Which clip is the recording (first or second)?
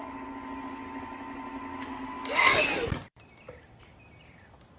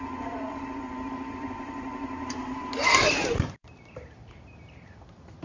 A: first